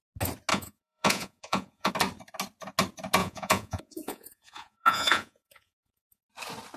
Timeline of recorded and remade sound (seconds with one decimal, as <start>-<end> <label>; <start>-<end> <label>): 0.0-0.5 recorded; 0.5-1.9 remade; 1.9-3.2 recorded; 3.2-6.3 remade; 6.3-6.8 recorded